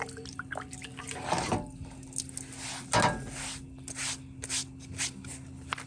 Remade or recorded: recorded